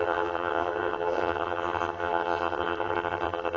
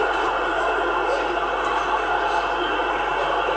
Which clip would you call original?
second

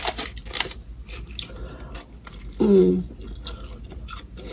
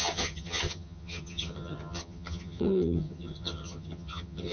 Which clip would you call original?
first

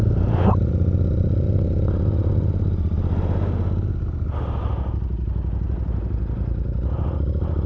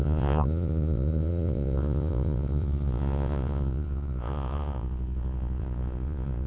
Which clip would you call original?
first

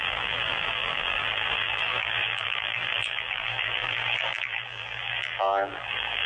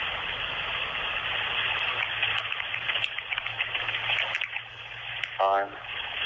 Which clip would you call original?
second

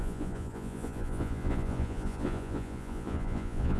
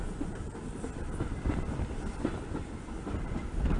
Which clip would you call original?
second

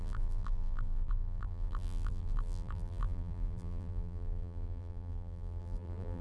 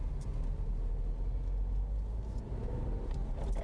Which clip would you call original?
second